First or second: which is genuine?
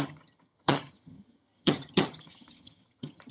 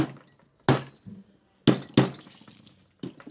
second